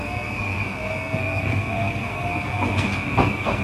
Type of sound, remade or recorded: remade